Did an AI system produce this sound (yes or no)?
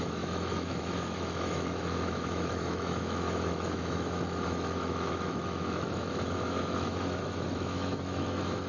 yes